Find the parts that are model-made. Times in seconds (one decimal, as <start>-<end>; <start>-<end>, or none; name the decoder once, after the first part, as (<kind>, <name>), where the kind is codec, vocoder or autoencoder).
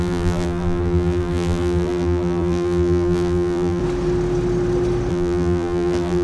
0.0-3.8 (vocoder, BigVGAN v2); 5.1-6.2